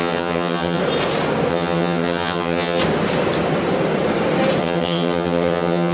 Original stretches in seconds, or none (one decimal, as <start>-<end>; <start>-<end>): 0.8-1.5; 2.8-4.6